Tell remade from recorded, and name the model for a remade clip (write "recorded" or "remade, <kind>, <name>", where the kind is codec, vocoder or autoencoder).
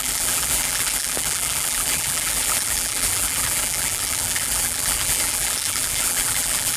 remade, vocoder, BigVGAN v2